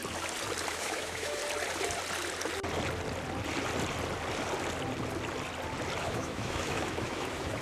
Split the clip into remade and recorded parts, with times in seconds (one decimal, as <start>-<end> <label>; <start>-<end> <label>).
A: 0.0-0.7 recorded; 0.7-1.4 remade; 1.4-6.0 recorded; 6.0-7.6 remade